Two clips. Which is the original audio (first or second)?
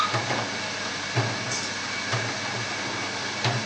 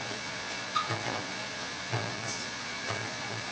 first